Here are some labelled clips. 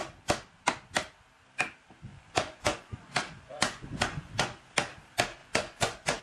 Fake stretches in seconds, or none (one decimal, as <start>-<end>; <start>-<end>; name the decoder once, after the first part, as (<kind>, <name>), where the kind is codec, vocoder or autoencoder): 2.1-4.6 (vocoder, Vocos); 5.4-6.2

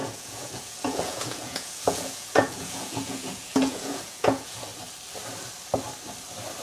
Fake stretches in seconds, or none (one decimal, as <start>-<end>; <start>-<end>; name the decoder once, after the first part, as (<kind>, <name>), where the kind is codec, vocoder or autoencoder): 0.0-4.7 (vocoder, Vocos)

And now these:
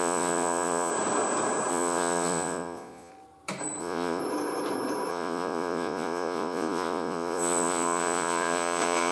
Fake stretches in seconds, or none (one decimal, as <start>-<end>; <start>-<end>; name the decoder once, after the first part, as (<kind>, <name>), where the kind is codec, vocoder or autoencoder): 0.0-0.9 (vocoder, Vocos); 1.7-3.1; 3.8-4.2; 5.1-9.1